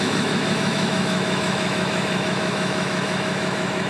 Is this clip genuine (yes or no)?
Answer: no